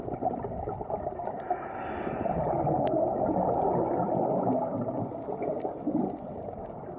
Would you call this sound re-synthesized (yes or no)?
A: yes